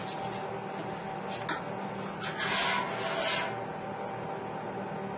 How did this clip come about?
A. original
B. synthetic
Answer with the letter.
A